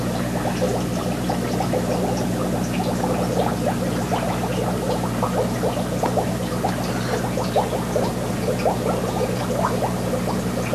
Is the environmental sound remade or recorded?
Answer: recorded